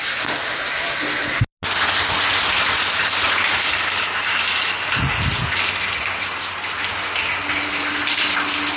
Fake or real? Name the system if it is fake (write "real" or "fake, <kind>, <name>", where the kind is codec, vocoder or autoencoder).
real